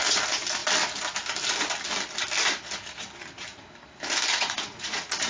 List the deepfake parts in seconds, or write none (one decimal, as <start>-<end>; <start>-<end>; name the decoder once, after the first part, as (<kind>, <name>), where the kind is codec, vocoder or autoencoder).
4.3-5.3 (vocoder, Vocos)